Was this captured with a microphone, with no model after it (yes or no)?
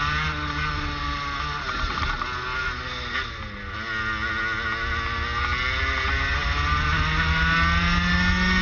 yes